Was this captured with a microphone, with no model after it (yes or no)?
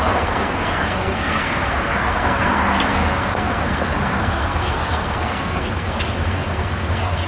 no